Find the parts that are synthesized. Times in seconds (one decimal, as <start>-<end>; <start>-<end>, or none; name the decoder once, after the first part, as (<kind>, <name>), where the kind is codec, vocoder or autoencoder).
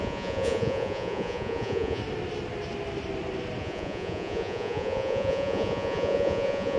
0.0-2.0 (vocoder, Vocos); 3.6-6.8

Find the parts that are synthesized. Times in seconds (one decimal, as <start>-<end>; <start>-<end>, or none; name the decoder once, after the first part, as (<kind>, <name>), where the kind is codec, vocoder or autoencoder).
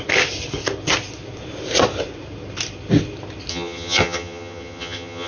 3.5-5.3 (vocoder, HiFi-GAN)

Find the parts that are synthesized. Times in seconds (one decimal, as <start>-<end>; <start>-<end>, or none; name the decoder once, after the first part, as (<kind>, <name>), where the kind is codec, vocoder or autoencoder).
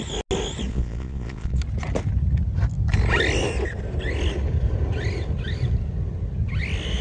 0.7-1.6 (vocoder, Vocos)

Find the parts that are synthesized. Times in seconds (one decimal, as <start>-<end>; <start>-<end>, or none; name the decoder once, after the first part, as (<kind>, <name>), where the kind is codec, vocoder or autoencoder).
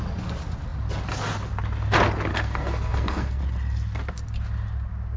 2.3-3.4 (codec, SNAC)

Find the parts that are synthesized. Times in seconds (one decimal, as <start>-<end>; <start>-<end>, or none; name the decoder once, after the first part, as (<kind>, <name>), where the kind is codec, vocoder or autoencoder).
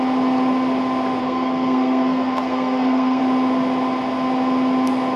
1.2-3.2 (codec, SNAC)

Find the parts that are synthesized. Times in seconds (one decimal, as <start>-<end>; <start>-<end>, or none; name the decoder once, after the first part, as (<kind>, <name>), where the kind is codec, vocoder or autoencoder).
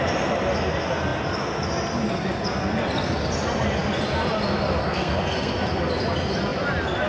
4.8-5.5 (codec, SNAC)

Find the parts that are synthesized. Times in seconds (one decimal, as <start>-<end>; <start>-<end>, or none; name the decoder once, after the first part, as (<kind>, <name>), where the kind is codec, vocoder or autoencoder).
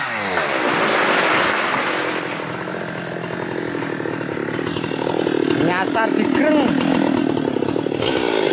none